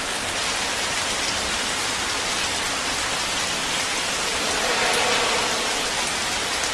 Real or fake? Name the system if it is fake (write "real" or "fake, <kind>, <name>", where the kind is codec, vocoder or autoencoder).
real